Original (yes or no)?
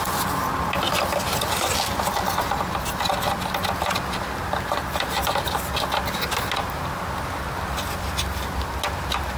yes